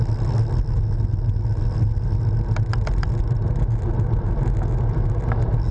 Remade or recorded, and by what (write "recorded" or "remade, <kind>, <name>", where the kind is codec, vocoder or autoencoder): recorded